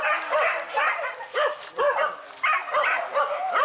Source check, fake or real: real